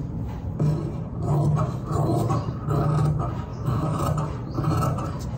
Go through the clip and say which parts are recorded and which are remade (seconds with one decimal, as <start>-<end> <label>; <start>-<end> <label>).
0.0-3.5 recorded; 3.5-4.0 remade; 4.0-5.4 recorded